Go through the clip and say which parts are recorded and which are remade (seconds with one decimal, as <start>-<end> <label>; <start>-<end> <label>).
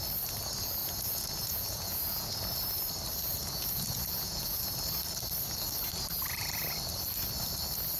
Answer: 0.0-0.8 recorded; 0.8-2.3 remade; 2.3-3.4 recorded; 3.4-4.6 remade; 4.6-8.0 recorded